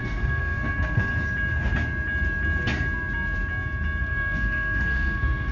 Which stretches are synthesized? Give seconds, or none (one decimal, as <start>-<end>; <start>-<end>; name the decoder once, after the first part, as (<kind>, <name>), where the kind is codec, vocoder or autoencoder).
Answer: 0.0-1.1 (codec, SNAC); 4.0-5.5